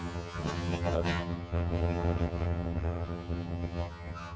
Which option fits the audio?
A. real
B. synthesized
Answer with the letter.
B